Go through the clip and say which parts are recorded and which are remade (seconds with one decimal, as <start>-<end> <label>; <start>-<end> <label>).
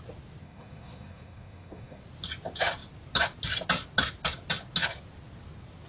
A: 0.0-0.4 recorded; 0.4-2.0 remade; 2.0-5.9 recorded